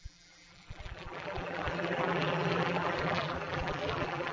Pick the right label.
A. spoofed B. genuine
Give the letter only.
A